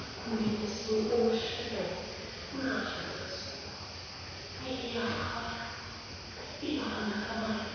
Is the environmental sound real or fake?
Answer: real